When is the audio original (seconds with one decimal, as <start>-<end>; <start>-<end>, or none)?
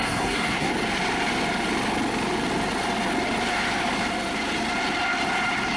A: 0.7-5.8